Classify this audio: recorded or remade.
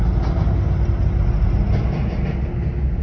recorded